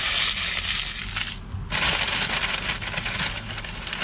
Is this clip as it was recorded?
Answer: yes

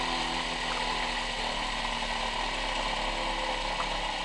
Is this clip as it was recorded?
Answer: yes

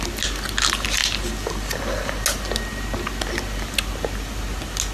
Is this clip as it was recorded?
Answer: yes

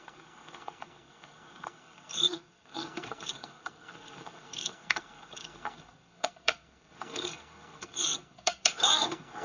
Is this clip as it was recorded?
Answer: no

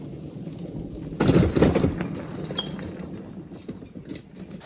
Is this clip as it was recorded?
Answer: yes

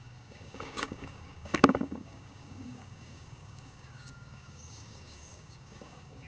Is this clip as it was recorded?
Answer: no